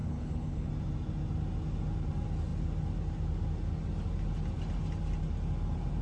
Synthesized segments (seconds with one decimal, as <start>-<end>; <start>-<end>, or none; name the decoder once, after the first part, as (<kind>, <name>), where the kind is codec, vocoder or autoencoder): 0.0-0.7 (codec, HILCodec)